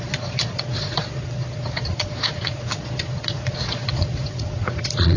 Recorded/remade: remade